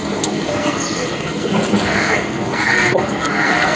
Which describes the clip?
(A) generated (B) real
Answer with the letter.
A